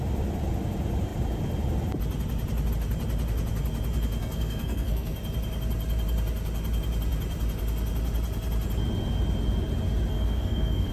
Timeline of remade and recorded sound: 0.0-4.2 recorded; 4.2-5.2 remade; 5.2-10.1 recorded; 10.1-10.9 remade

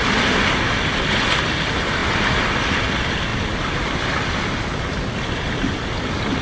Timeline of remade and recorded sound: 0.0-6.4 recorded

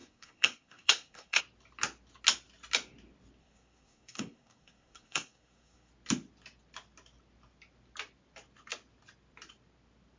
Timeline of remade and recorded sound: 0.0-1.4 remade; 1.4-3.4 recorded; 3.4-5.9 remade; 5.9-10.2 recorded